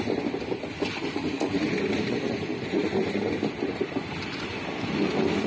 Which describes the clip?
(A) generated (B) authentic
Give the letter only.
B